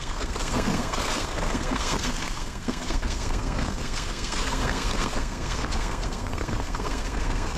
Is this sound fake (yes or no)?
yes